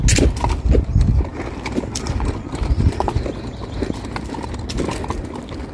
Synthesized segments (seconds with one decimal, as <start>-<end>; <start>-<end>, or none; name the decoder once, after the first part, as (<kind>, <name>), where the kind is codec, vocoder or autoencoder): none